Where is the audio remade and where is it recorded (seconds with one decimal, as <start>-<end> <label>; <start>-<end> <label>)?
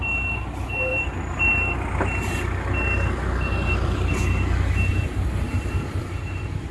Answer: 0.0-6.7 recorded